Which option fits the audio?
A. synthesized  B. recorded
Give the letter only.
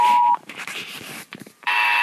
A